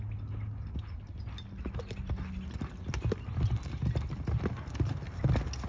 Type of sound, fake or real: real